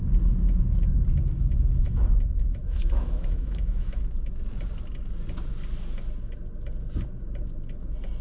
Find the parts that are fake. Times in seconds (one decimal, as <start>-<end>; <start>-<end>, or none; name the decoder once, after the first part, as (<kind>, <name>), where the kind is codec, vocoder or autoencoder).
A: 2.6-4.0 (autoencoder, DAC-VAE)